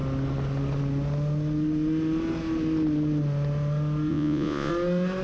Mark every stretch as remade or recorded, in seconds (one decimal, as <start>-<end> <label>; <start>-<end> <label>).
0.0-4.1 recorded; 4.1-4.7 remade; 4.7-5.2 recorded